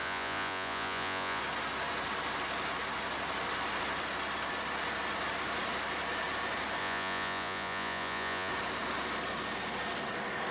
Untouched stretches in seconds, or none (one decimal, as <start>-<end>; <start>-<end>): 1.4-6.8; 8.5-10.5